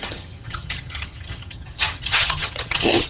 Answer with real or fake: fake